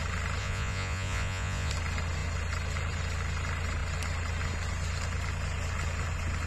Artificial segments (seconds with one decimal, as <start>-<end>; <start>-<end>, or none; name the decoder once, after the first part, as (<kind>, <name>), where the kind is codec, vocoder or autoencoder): 0.4-1.7 (vocoder, Vocos)